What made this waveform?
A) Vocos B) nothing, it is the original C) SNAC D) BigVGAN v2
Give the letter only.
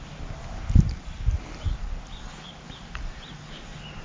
B